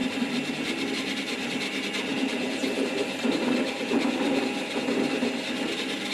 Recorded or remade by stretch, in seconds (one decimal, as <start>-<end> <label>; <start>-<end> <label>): 0.0-2.1 recorded; 2.1-4.8 remade; 4.8-6.1 recorded